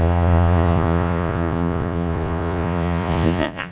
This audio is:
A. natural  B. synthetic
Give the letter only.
B